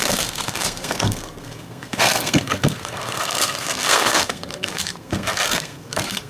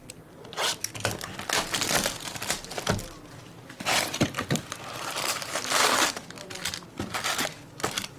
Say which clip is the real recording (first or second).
second